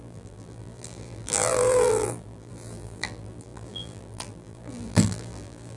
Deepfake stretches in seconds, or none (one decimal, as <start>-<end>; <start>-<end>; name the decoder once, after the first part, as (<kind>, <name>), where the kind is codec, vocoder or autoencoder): 0.0-5.8 (vocoder, BigVGAN v2)